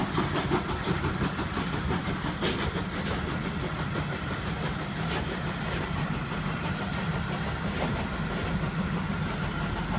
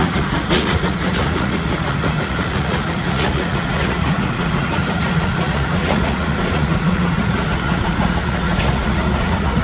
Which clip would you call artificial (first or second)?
second